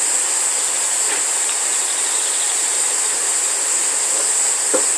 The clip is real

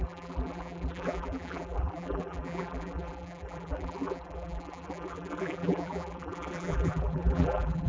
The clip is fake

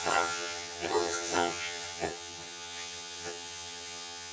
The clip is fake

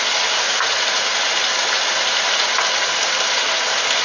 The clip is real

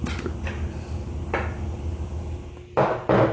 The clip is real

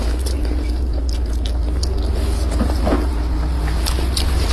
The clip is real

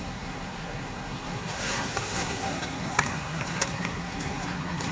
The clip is fake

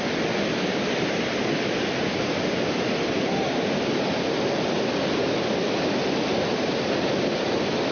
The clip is real